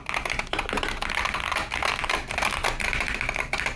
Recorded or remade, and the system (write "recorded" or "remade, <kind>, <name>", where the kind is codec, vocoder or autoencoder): recorded